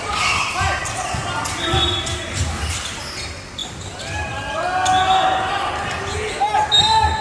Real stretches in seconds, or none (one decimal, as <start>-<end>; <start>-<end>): 0.0-7.2